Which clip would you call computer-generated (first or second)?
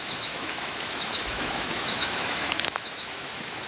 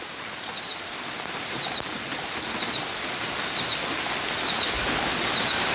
first